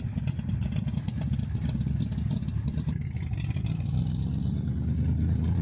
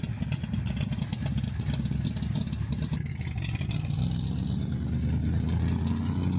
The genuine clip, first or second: second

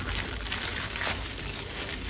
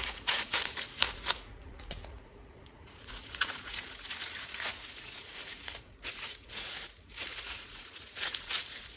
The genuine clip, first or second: first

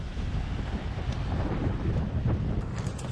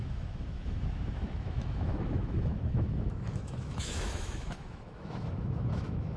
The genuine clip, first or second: first